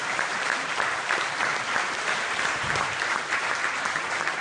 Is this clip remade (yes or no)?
yes